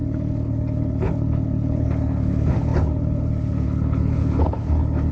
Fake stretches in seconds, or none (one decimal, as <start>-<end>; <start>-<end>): 0.0-5.1